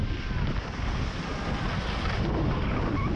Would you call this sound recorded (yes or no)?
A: yes